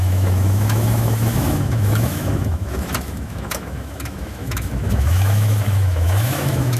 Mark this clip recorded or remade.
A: remade